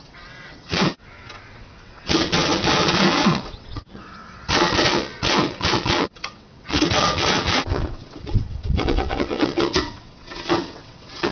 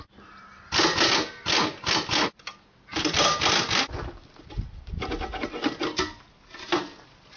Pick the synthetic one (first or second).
first